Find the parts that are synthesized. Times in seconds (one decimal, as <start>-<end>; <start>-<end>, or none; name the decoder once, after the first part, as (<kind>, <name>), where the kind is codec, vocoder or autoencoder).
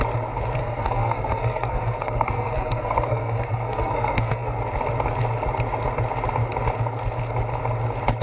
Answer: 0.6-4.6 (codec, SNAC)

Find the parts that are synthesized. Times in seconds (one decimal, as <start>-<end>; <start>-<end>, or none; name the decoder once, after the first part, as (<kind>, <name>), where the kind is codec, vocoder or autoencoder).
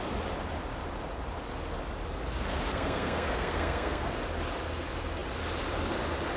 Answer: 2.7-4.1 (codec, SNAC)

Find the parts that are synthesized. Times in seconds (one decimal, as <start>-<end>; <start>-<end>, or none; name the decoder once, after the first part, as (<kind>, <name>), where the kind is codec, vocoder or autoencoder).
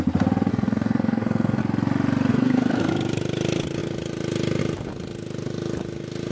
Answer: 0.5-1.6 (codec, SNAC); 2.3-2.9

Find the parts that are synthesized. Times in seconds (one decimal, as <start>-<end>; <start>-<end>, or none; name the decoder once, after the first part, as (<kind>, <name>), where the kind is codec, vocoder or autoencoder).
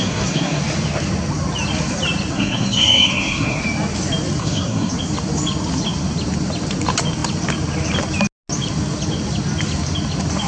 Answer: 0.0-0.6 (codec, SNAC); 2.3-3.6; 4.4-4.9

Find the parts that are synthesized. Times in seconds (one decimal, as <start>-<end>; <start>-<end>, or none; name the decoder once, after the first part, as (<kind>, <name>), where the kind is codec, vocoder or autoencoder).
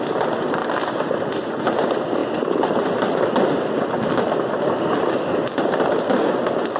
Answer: none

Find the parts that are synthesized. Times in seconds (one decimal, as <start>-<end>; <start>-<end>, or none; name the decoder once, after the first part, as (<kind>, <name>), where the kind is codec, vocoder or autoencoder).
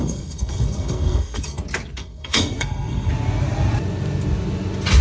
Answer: 0.0-1.6 (codec, SNAC); 2.0-3.1